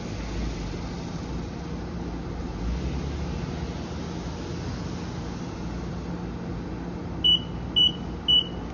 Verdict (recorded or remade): recorded